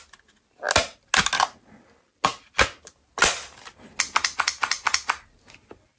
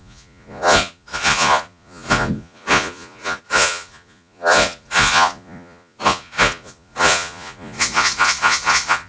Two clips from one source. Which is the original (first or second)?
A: first